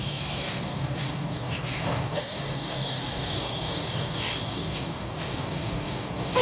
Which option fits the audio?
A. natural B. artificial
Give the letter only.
B